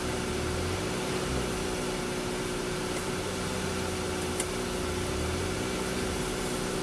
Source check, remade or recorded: recorded